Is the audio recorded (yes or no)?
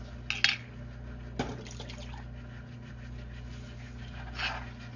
yes